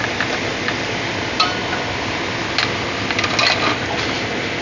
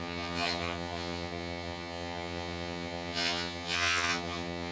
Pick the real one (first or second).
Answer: first